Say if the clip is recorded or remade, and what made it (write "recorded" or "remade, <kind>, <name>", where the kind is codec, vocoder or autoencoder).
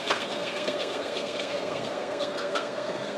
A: remade, codec, SNAC